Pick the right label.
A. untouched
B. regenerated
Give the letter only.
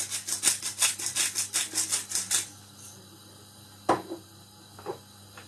A